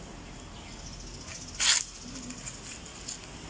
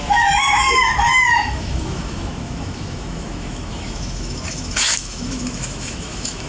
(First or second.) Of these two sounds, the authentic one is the first